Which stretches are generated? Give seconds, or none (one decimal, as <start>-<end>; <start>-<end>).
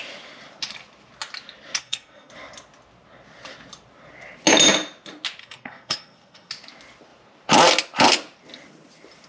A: 1.8-2.3; 5.4-6.5